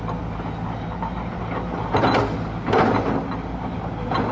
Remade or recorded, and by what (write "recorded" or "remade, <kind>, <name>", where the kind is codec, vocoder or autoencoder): recorded